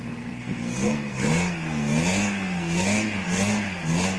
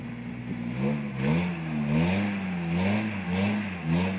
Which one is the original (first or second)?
second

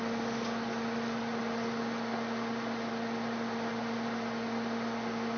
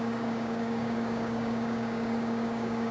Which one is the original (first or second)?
first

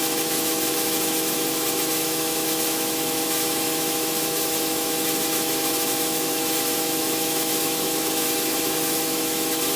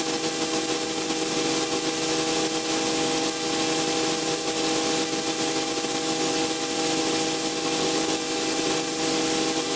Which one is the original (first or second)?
second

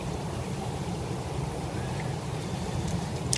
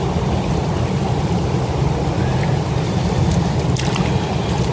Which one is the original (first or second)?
second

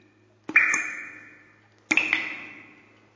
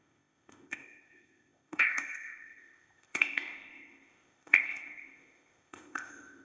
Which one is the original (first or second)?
first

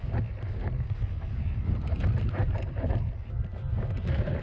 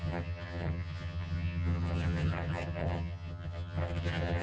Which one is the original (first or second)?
first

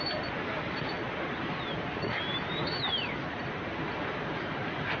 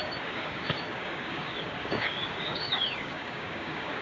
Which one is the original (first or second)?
first